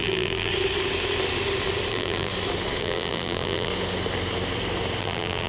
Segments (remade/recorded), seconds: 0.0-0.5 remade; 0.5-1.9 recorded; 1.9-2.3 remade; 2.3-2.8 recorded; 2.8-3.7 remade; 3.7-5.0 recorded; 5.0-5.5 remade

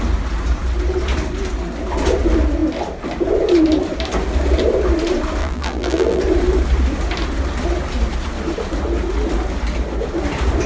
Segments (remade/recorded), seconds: 0.0-5.4 recorded; 5.4-6.2 remade; 6.2-10.7 recorded

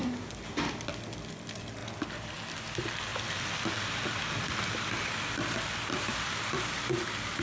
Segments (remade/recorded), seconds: 0.0-3.1 recorded; 3.1-6.9 remade; 6.9-7.4 recorded

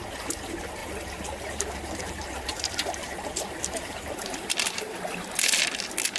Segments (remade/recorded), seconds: 0.0-0.8 recorded; 0.8-4.5 remade; 4.5-6.2 recorded

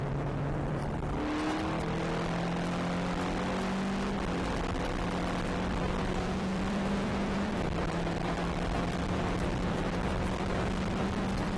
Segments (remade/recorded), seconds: 0.0-0.8 remade; 0.8-5.7 recorded; 5.7-11.6 remade

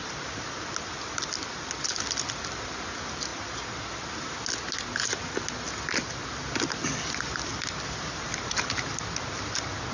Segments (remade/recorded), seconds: 0.0-3.3 remade; 3.3-6.8 recorded; 6.8-9.9 remade

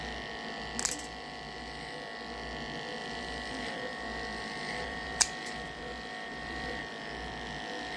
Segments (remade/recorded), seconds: 0.0-3.0 recorded; 3.0-6.8 remade; 6.8-8.0 recorded